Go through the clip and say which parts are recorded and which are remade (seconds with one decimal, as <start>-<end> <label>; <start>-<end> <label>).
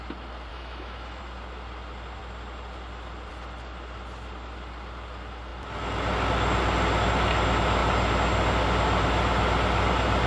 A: 0.0-0.5 recorded; 0.5-1.2 remade; 1.2-10.3 recorded